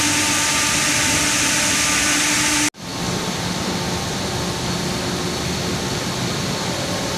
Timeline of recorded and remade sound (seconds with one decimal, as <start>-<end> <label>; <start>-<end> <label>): 0.0-7.2 recorded